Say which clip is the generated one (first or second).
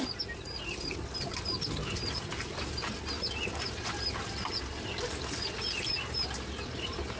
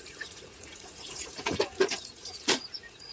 second